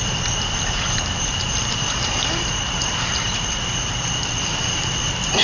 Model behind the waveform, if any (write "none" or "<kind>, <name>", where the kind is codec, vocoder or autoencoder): vocoder, BigVGAN v2